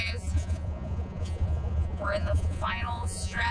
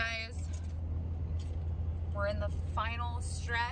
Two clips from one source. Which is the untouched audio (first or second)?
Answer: second